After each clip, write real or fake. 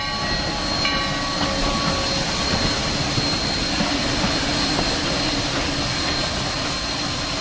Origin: real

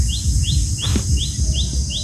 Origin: real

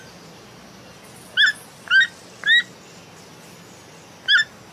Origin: real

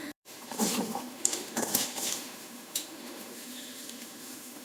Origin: fake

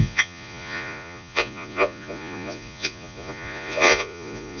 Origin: fake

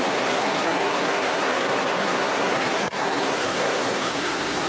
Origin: fake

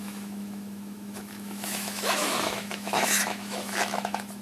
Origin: fake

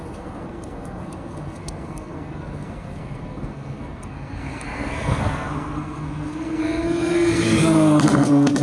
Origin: fake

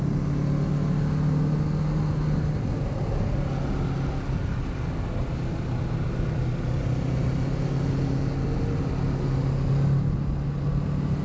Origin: real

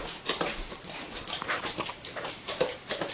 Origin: fake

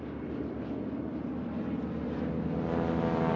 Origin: real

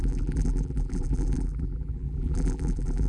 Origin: fake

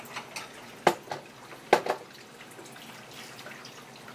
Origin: real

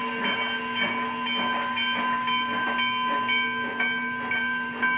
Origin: real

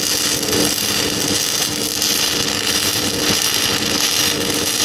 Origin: real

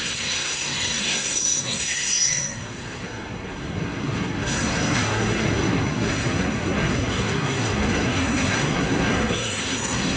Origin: fake